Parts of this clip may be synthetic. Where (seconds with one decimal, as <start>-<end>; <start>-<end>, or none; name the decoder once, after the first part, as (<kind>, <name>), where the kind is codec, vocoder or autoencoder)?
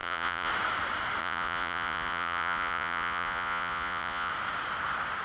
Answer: 0.0-0.5 (vocoder, Vocos); 1.2-4.3